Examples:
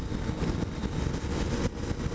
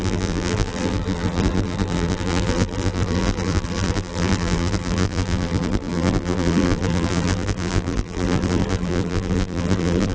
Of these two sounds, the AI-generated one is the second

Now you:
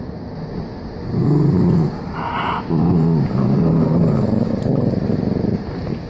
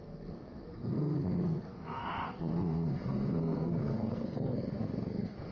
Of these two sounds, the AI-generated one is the second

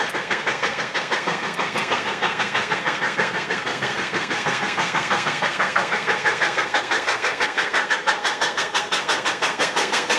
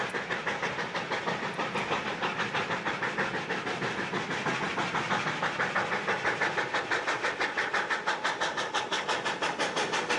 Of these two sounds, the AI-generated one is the first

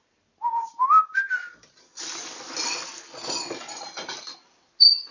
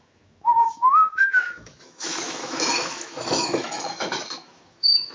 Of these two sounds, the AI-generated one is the second